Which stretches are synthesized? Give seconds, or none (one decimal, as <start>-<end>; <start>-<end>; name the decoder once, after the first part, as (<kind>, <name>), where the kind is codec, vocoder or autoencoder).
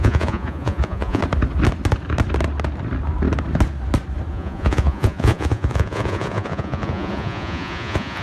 0.0-1.2 (vocoder, Vocos); 4.3-8.2